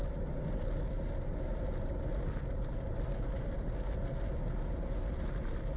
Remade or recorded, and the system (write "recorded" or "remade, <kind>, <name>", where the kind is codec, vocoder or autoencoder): recorded